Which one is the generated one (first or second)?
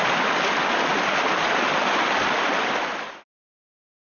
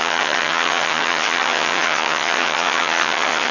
second